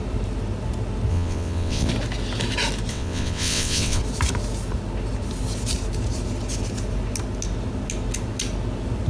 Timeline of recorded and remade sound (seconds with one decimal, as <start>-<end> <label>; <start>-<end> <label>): 0.0-1.1 recorded; 1.1-1.9 remade; 1.9-2.9 recorded; 2.9-4.0 remade; 4.0-9.1 recorded